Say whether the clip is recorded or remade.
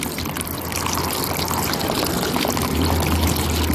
recorded